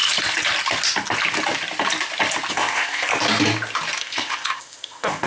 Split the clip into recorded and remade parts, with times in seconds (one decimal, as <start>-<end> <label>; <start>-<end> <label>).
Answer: 0.0-2.5 recorded; 2.5-3.1 remade; 3.1-4.0 recorded; 4.0-5.3 remade